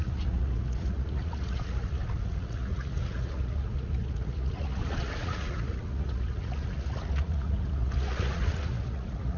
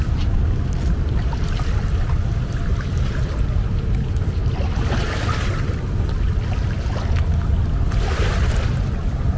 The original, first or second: second